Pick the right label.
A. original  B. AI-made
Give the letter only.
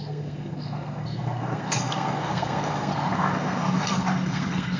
B